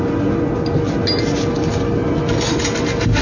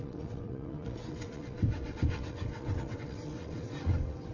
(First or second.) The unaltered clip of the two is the first